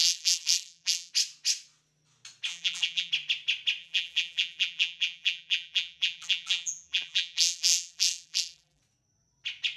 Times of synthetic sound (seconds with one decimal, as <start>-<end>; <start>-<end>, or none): 0.0-1.1; 2.5-3.1; 3.8-8.8